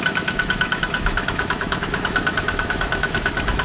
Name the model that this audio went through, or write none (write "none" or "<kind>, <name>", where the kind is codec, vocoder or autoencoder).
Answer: autoencoder, DAC-VAE